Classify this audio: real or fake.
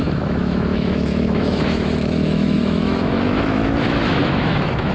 fake